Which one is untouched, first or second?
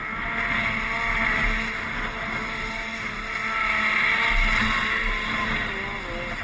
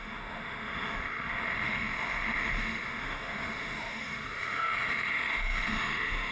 first